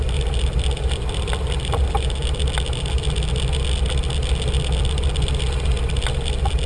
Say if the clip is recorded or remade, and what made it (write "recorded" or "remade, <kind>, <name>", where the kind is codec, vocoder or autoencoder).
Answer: recorded